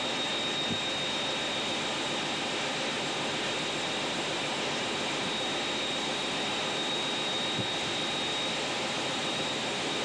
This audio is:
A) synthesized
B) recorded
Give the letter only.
B